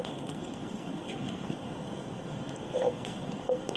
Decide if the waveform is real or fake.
fake